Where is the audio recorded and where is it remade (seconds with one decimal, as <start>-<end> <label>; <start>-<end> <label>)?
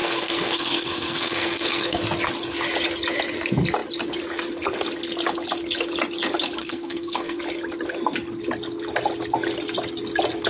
0.0-2.0 remade; 2.0-6.6 recorded; 6.6-7.4 remade; 7.4-10.5 recorded